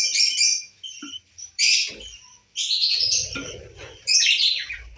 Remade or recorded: remade